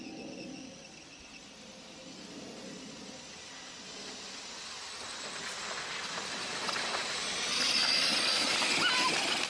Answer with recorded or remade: recorded